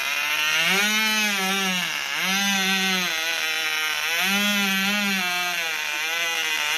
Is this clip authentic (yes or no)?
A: yes